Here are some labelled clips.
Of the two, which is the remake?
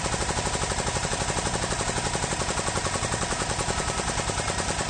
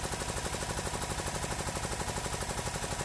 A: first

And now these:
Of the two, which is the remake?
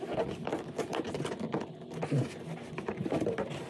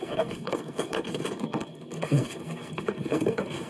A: second